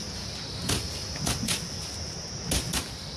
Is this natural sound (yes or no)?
yes